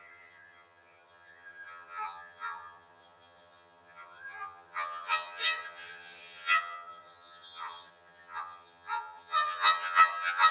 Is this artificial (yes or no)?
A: yes